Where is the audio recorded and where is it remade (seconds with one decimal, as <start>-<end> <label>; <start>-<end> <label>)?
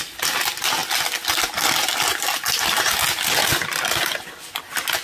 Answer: 0.0-2.1 recorded; 2.1-4.6 remade; 4.6-5.0 recorded